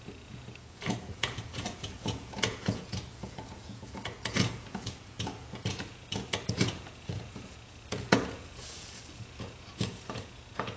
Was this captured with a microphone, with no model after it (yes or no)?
no